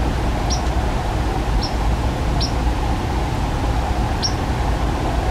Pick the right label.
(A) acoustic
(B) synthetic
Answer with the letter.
A